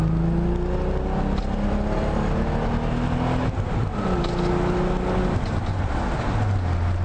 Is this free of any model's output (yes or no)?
yes